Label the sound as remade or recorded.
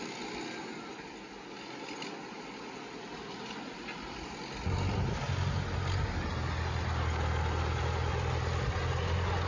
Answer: recorded